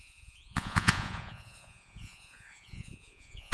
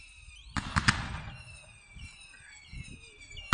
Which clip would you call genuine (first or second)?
second